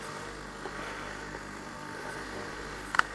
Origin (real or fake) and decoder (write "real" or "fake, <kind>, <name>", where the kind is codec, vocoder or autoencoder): fake, codec, SNAC